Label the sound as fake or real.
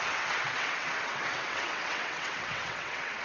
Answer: fake